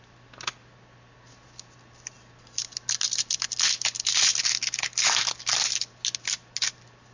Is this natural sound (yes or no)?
yes